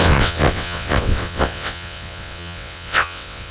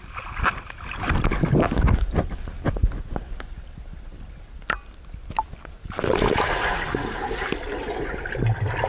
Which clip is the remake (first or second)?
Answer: first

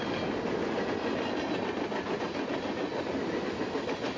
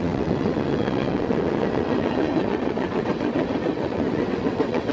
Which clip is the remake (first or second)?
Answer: second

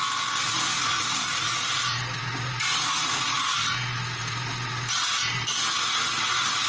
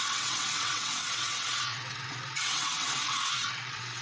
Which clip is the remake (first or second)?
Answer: second